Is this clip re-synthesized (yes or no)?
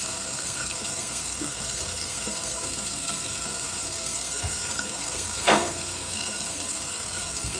yes